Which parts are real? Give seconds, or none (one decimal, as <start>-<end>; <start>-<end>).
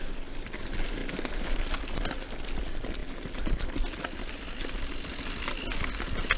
0.0-6.4